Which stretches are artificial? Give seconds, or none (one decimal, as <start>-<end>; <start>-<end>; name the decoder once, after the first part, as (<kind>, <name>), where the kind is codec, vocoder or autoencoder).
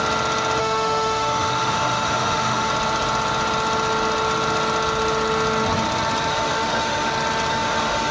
0.6-2.7 (autoencoder, DAC-VAE); 6.3-7.1; 7.5-8.1